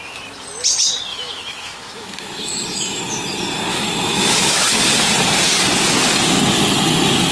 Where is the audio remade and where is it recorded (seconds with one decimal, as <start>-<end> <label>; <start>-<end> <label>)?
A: 0.0-1.1 recorded; 1.1-3.0 remade; 3.0-3.7 recorded; 3.7-4.7 remade; 4.7-7.3 recorded